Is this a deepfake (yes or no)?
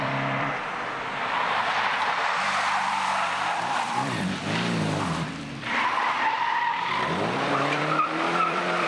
yes